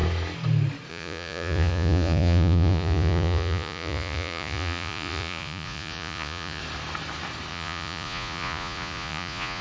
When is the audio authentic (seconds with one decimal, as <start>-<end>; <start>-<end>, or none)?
0.0-0.9; 6.6-7.5